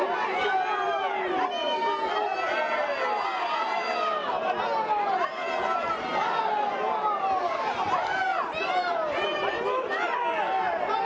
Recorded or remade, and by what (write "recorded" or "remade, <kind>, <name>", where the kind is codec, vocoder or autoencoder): recorded